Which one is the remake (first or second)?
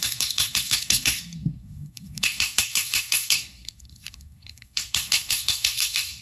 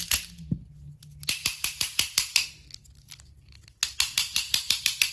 first